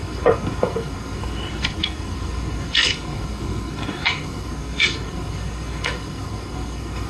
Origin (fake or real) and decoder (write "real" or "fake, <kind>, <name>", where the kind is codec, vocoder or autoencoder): fake, codec, SNAC